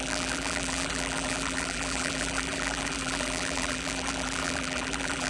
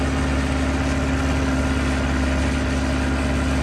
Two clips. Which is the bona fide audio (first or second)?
second